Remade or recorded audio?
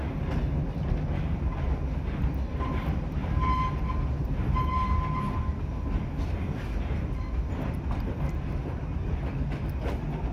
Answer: recorded